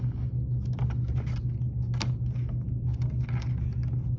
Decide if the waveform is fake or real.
real